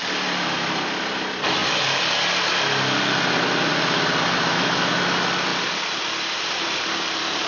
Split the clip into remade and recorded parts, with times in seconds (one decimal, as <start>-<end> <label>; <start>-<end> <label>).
0.0-4.5 recorded; 4.5-5.0 remade; 5.0-7.5 recorded